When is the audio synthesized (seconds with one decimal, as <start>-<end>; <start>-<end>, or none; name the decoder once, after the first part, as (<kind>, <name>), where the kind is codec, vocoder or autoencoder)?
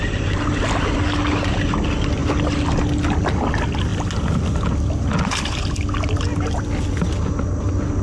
none